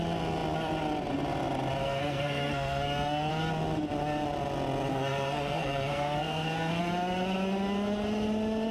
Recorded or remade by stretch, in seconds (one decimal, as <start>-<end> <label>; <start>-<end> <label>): 0.0-1.8 recorded; 1.8-3.3 remade; 3.3-4.9 recorded; 4.9-6.8 remade; 6.8-8.7 recorded